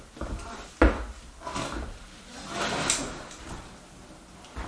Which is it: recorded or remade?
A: recorded